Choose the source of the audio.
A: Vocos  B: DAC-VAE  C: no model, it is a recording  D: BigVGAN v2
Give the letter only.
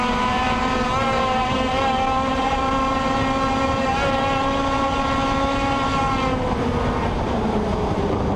D